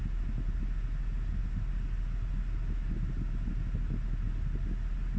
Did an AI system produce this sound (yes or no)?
no